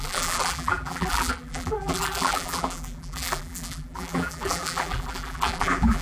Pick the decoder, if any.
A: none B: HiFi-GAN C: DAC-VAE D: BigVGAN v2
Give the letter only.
D